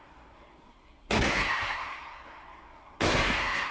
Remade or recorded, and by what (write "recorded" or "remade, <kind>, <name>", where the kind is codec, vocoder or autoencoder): remade, codec, SNAC